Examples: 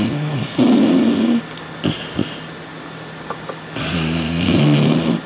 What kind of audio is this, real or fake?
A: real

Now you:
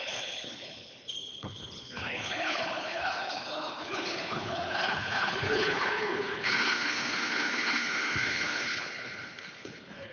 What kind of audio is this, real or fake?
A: fake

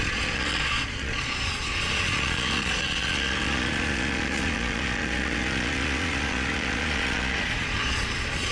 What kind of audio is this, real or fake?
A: fake